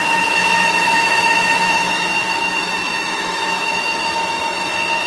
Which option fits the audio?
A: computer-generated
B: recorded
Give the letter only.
A